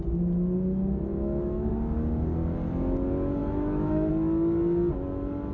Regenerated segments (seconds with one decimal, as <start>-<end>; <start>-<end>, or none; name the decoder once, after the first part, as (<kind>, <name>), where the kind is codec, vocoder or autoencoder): 1.1-1.7 (autoencoder, DAC-VAE); 3.4-4.1